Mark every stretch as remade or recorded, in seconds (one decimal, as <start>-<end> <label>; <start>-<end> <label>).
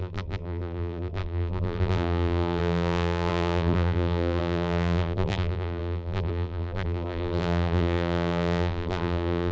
0.0-9.5 remade